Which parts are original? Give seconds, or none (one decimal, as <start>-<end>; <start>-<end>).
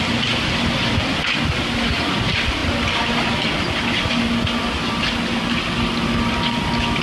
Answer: 0.0-7.0